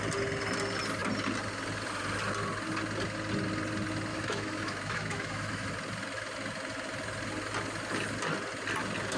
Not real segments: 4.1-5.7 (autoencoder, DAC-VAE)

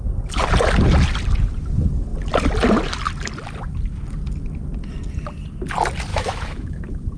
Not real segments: 6.1-6.8 (autoencoder, DAC-VAE)

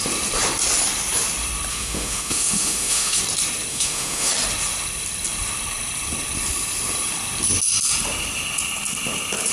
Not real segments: 1.7-3.2 (autoencoder, DAC-VAE); 3.7-4.3

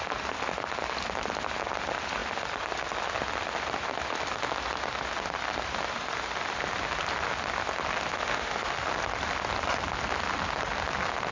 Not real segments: 8.1-8.7 (autoencoder, DAC-VAE)

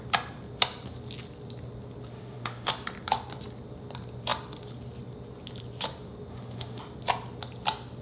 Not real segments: 2.1-2.7 (autoencoder, DAC-VAE); 6.3-6.8

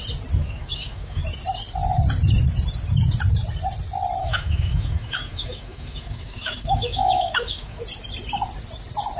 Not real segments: 0.4-1.2 (autoencoder, DAC-VAE); 4.2-7.8

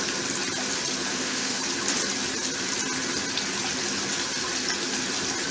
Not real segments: 1.1-1.6 (autoencoder, DAC-VAE)

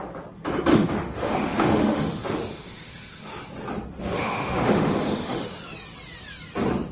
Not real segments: 0.7-3.4 (autoencoder, DAC-VAE); 4.0-5.6